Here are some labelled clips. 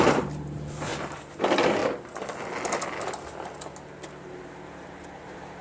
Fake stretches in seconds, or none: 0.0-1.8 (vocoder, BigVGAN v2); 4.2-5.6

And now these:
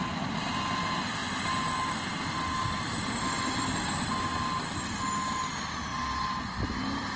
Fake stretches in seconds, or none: none

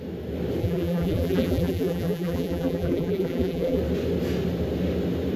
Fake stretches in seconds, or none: 0.6-3.8 (vocoder, BigVGAN v2)

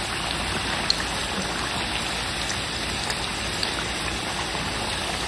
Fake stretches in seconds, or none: 1.2-4.2 (vocoder, BigVGAN v2)

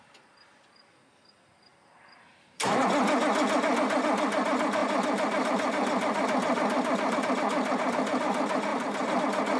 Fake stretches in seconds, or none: 1.7-2.8 (vocoder, BigVGAN v2); 8.7-9.2